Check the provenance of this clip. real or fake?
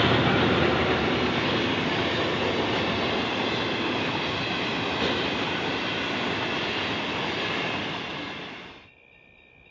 real